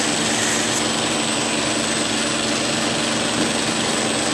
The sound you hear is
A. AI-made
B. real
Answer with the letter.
B